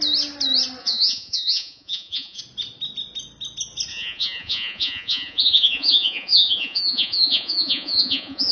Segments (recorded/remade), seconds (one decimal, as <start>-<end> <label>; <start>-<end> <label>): 0.0-0.8 recorded; 0.8-2.4 remade; 2.4-3.9 recorded; 3.9-8.5 remade